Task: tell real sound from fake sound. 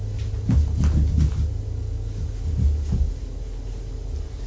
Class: real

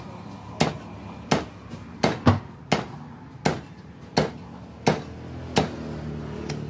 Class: real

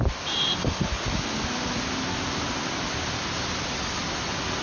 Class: real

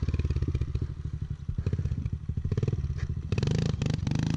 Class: real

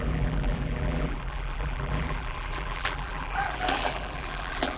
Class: fake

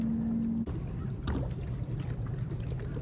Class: real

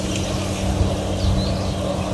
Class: real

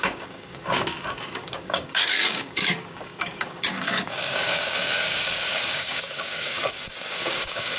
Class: fake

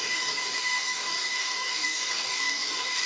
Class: fake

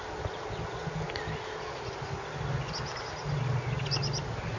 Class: real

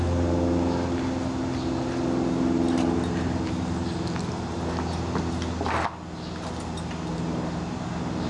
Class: real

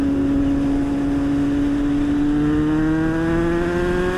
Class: real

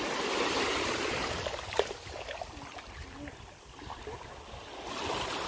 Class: real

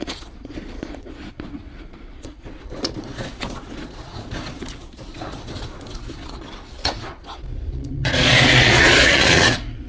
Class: fake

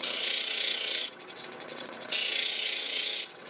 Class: fake